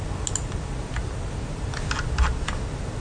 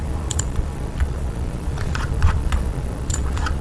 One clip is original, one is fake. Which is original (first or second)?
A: first